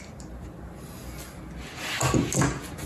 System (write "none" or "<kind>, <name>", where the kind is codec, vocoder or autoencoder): none